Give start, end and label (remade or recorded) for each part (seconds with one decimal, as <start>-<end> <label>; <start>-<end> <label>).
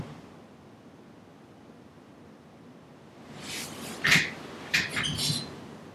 0.0-5.9 recorded